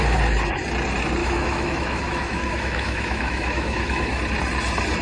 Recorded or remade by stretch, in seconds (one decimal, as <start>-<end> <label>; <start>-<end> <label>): 0.0-1.2 recorded; 1.2-4.2 remade; 4.2-5.0 recorded